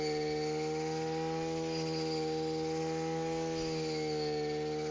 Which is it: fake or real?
real